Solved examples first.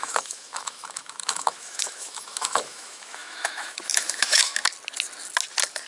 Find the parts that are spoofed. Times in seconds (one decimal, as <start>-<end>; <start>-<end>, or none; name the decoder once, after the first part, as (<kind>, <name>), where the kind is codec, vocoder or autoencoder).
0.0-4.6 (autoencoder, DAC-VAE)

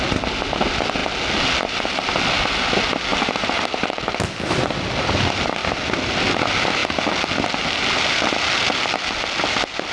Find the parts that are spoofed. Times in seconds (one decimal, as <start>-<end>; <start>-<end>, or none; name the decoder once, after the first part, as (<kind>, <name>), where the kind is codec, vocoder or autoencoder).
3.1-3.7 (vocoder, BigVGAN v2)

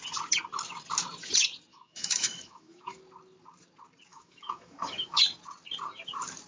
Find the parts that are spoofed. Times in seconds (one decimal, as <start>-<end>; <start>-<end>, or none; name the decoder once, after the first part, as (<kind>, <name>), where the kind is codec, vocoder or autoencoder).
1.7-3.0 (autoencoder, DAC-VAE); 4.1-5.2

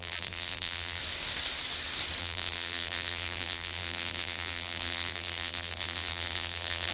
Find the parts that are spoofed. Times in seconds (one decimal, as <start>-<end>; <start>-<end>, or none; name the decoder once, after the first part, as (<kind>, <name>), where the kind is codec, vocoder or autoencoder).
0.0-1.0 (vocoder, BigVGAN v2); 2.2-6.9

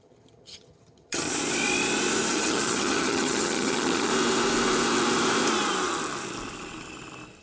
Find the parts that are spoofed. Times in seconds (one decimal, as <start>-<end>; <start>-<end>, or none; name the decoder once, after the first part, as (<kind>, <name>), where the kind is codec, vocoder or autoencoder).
0.0-1.2 (vocoder, HiFi-GAN); 2.3-4.1